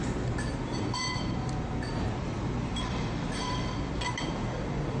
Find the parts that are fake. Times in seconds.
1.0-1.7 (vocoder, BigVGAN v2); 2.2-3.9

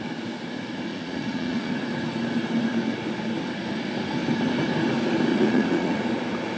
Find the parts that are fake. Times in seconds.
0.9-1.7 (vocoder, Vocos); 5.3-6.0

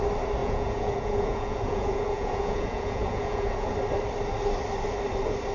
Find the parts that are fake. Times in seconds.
0.4-3.7 (vocoder, Vocos)

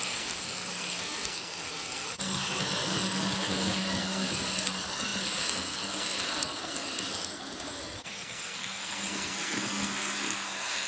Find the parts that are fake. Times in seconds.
0.0-10.9 (codec, SNAC)